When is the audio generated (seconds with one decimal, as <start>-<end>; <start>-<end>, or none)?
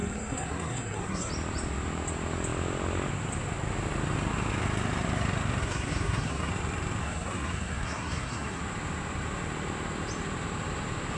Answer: 0.0-1.3; 5.6-6.5; 7.0-8.6